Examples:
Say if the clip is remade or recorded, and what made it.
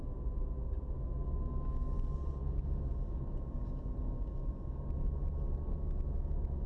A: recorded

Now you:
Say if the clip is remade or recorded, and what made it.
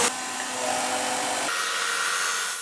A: recorded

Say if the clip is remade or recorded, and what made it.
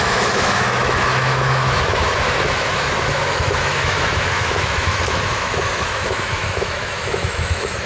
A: remade, autoencoder, DAC-VAE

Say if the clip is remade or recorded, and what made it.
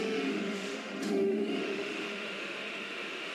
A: remade, autoencoder, DAC-VAE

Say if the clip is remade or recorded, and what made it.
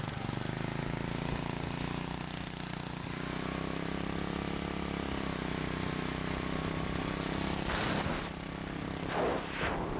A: recorded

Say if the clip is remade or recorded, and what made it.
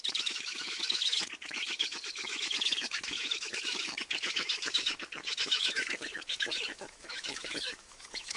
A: remade, autoencoder, DAC-VAE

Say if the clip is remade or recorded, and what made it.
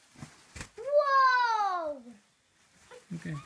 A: recorded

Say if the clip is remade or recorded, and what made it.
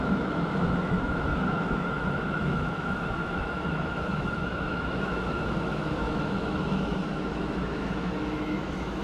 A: remade, autoencoder, DAC-VAE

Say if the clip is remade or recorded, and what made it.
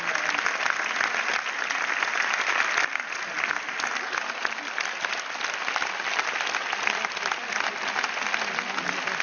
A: recorded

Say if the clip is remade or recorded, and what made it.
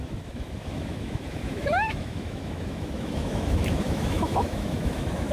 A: remade, autoencoder, DAC-VAE